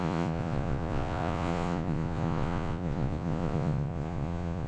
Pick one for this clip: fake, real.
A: fake